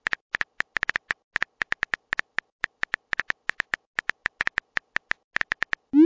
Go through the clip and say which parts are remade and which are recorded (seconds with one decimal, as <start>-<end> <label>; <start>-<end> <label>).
0.0-6.1 recorded